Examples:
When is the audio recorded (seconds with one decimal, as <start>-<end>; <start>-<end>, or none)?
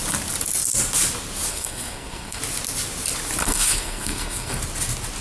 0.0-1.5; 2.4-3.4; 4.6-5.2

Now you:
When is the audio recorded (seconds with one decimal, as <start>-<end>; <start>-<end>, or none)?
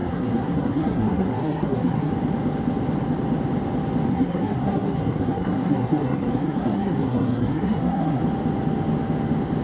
2.1-4.1; 8.2-9.6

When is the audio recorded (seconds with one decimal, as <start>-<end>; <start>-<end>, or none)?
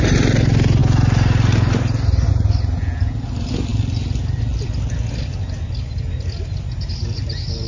0.0-7.7